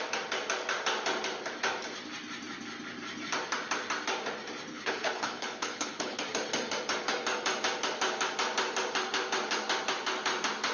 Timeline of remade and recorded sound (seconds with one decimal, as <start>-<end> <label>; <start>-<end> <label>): 0.0-4.7 recorded; 4.7-6.2 remade; 6.2-10.7 recorded